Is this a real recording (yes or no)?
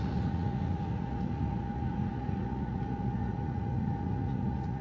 no